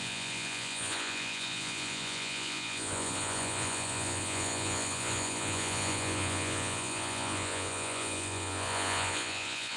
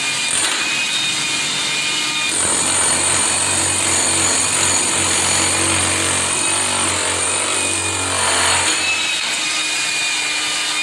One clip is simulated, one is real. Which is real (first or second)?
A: second